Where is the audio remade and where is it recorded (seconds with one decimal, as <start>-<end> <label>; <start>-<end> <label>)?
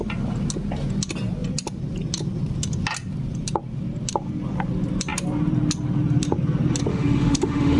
0.0-6.9 recorded; 6.9-7.8 remade